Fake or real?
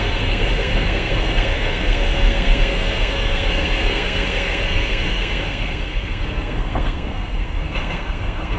fake